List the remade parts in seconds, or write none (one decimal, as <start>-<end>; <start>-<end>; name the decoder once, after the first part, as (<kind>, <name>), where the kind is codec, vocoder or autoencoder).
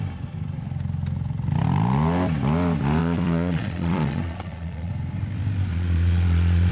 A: 3.0-4.9 (vocoder, Vocos); 5.7-6.7